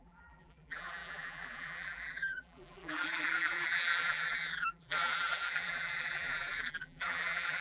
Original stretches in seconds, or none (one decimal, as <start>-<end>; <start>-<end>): none